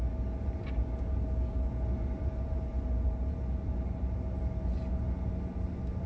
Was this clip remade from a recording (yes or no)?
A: no